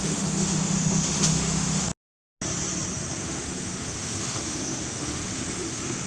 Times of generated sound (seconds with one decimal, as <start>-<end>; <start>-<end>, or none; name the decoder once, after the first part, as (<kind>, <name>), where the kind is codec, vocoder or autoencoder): 0.0-1.9 (autoencoder, DAC-VAE); 3.2-6.1